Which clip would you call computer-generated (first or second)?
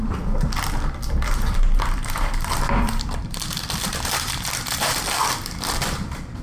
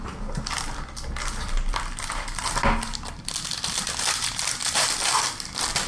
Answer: first